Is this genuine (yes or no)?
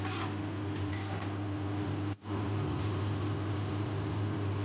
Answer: yes